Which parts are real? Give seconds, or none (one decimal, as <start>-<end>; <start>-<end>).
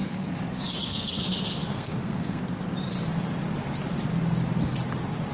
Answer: 1.2-1.7; 2.4-5.3